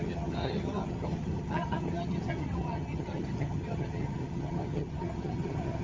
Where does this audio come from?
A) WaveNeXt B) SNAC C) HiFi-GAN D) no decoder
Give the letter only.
C